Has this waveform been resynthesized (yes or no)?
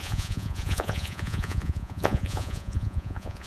yes